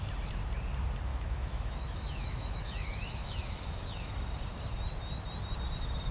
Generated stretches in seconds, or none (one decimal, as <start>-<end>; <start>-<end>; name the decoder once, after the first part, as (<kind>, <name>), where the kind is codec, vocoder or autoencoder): 1.1-4.1 (autoencoder, DAC-VAE)